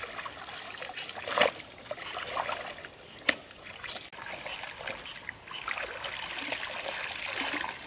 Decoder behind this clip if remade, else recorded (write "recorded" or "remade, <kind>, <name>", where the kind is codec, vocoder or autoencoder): recorded